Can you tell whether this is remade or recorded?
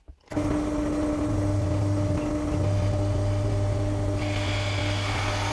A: recorded